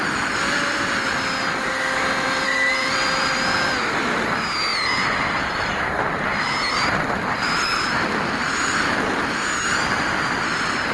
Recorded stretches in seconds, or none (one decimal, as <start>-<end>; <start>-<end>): 4.7-6.7